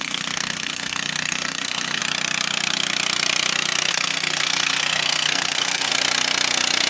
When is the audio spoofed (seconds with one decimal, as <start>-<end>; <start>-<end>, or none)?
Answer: 0.0-2.0; 3.9-5.9